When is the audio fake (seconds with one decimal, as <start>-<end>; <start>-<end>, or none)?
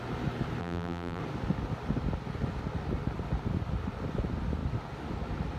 0.6-1.2